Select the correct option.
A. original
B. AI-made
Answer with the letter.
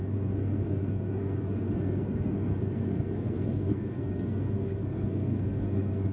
B